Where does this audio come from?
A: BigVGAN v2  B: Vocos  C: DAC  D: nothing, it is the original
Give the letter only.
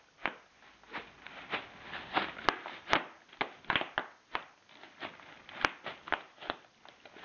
D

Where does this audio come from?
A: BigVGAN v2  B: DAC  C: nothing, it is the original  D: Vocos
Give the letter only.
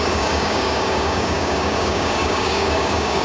B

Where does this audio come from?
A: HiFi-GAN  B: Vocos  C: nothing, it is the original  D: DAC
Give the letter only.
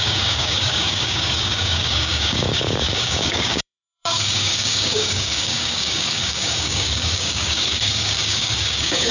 D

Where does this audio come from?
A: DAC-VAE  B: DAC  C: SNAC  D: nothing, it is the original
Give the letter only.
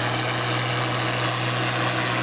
D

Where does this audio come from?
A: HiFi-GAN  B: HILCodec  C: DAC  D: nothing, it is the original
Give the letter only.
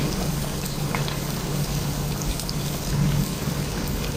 C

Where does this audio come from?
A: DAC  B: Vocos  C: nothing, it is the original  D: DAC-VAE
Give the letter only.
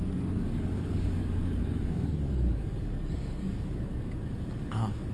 A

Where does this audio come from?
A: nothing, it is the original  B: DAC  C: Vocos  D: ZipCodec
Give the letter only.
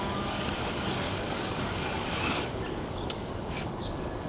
B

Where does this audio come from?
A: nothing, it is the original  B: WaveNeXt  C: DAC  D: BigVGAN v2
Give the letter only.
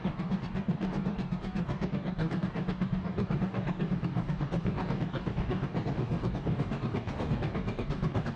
C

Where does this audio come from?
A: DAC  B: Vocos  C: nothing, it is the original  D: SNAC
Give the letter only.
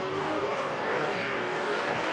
A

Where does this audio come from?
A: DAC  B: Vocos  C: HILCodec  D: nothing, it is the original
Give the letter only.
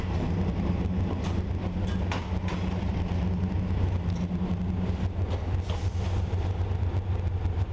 D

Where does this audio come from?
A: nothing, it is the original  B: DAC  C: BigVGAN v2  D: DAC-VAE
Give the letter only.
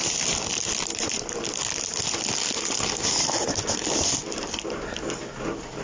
A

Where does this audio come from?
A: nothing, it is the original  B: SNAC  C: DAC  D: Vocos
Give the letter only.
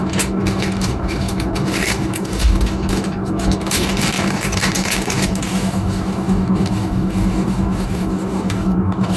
C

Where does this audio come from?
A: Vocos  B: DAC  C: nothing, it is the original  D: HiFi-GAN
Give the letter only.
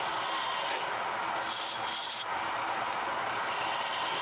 C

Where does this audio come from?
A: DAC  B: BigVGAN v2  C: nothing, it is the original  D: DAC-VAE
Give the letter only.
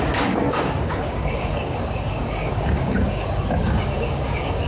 A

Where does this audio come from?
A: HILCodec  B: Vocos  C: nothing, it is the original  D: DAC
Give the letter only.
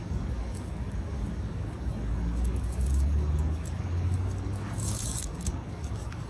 D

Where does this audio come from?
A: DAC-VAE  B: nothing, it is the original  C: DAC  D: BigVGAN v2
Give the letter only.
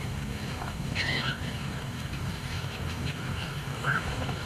C